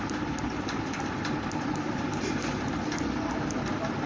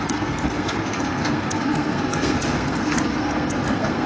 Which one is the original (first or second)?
first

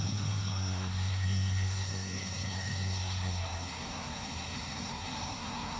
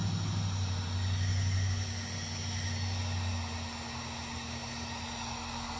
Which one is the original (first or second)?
second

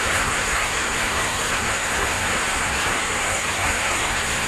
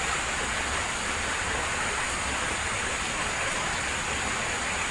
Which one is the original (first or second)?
second